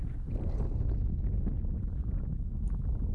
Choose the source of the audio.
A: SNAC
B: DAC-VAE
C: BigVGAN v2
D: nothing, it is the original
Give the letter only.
D